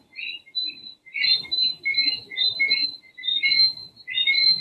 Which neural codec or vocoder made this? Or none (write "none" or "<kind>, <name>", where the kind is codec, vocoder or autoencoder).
none